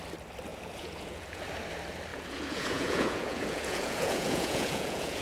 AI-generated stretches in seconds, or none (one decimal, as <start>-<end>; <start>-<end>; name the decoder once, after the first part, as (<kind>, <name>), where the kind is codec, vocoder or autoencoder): 0.5-1.4 (vocoder, Vocos); 2.1-5.2